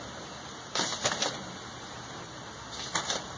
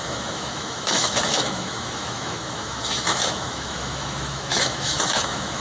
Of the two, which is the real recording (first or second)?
first